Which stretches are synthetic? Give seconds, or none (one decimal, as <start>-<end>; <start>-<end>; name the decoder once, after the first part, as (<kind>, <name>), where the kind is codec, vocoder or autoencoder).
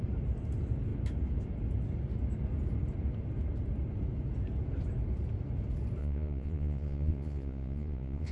6.0-8.3 (vocoder, Vocos)